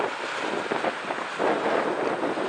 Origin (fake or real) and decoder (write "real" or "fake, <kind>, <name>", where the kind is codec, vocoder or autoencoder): real